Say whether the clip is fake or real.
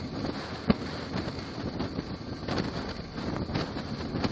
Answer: real